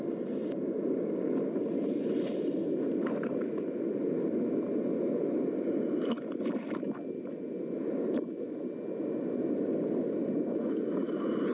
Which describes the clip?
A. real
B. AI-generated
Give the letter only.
A